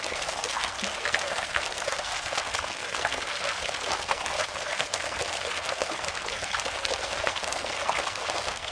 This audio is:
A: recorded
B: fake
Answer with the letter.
B